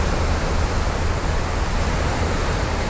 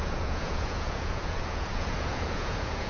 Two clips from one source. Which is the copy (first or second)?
second